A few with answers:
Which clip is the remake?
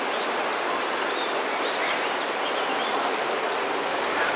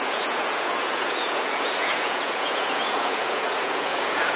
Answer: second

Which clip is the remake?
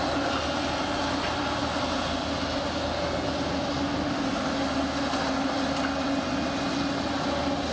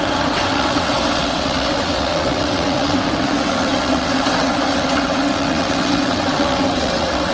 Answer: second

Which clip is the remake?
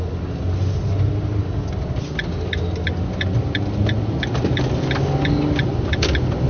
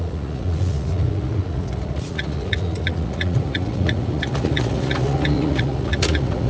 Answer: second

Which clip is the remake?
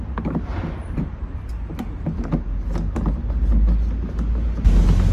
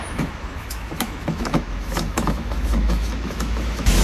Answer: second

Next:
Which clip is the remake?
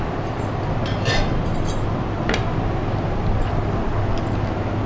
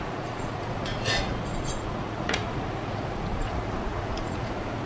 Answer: second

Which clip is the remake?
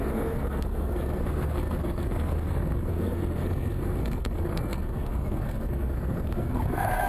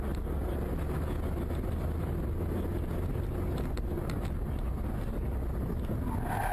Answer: first